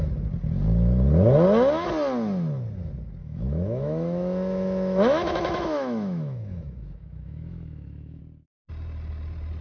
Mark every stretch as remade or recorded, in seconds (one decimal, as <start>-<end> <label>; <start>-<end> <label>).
0.0-3.2 recorded; 3.2-8.2 remade; 8.2-9.6 recorded